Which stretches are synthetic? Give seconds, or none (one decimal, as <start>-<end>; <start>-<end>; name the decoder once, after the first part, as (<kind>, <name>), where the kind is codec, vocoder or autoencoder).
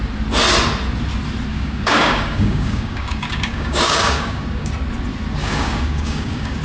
1.5-4.7 (codec, DAC); 5.4-6.6